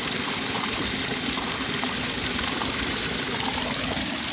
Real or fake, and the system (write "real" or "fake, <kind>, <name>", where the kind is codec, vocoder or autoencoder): real